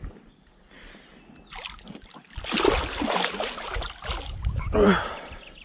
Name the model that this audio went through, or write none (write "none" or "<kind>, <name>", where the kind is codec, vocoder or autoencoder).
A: none